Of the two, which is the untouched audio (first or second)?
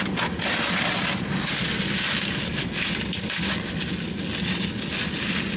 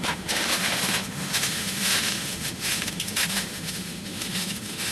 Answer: first